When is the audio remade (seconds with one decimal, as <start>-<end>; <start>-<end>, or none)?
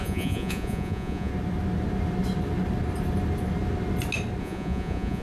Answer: 0.0-1.3; 4.4-5.2